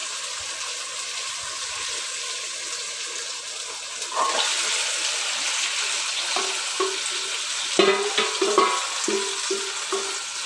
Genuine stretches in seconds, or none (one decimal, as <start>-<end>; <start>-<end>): 2.0-10.5